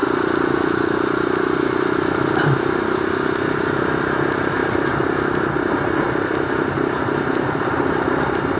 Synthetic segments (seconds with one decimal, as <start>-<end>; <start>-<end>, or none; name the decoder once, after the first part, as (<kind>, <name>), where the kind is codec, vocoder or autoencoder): none